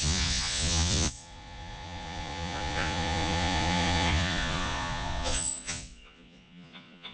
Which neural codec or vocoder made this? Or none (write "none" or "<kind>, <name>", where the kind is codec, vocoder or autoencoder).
vocoder, Vocos